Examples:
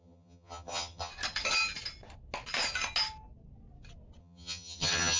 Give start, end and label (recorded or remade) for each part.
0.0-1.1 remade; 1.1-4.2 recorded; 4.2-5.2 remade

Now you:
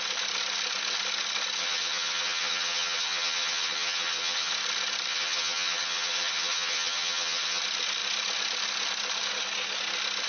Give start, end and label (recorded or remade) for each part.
0.0-1.6 recorded; 1.6-4.5 remade; 4.5-5.1 recorded; 5.1-7.6 remade; 7.6-10.3 recorded

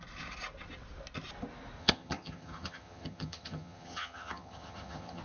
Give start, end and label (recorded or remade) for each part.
0.0-1.8 recorded; 1.8-5.2 remade

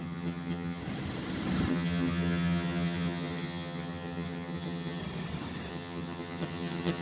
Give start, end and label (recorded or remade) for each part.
0.0-0.8 remade; 0.8-1.7 recorded; 1.7-5.0 remade; 5.0-5.7 recorded; 5.7-7.0 remade

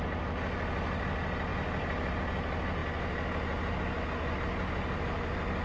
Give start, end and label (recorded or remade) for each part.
0.0-5.6 recorded

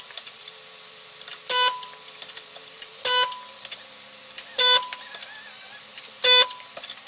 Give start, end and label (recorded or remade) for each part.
0.0-7.1 recorded

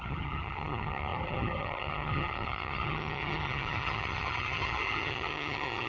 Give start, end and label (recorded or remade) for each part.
0.0-5.9 remade